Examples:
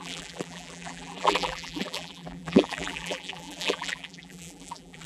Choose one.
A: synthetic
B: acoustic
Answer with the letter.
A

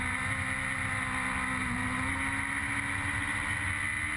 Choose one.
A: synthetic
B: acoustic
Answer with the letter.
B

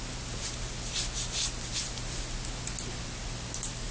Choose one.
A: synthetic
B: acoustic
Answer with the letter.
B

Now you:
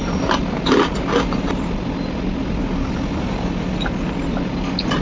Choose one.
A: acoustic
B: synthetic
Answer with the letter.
A